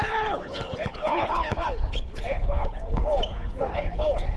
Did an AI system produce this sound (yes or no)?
yes